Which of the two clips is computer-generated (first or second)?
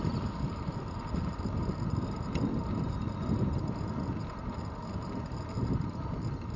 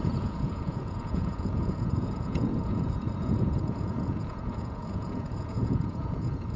second